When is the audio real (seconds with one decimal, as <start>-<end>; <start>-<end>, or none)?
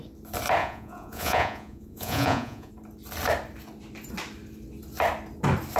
0.0-0.6; 2.7-5.8